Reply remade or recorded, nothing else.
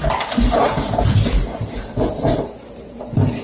remade